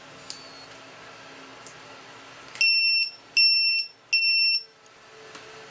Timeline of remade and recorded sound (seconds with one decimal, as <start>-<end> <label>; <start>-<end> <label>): 0.0-5.7 recorded